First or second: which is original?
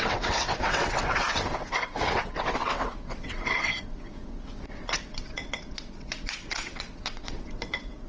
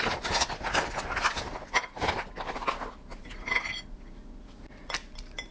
second